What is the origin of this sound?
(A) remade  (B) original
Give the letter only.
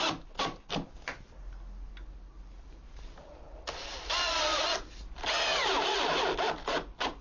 B